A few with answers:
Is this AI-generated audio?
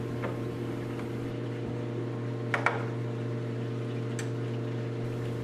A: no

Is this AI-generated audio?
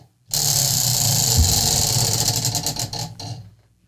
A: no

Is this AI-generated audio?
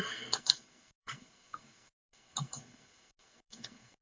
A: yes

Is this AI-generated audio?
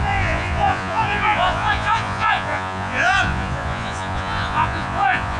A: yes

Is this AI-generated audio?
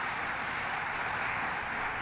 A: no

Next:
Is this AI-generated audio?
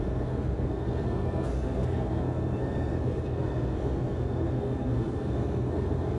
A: yes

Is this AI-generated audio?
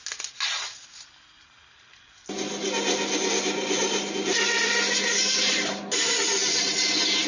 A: no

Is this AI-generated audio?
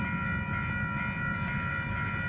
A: no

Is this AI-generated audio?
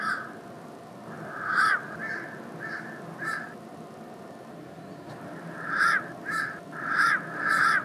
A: no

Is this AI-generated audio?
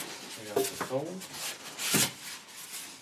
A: no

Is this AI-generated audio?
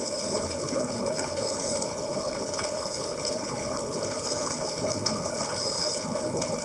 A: yes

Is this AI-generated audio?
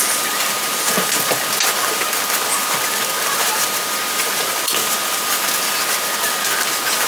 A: no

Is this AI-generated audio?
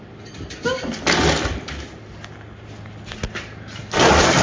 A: no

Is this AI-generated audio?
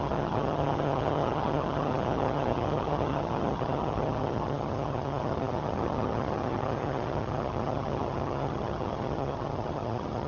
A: yes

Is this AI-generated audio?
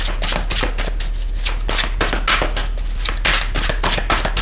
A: no